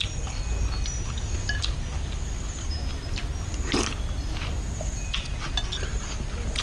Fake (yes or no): no